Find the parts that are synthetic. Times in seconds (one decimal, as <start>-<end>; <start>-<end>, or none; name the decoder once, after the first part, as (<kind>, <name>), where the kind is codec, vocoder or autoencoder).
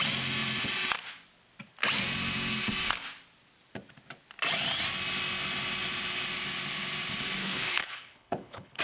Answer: 7.4-8.8 (codec, HILCodec)